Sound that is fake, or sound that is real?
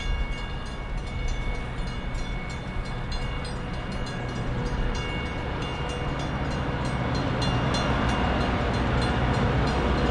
real